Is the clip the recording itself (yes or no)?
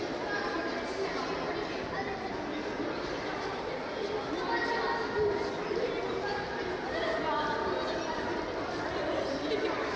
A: yes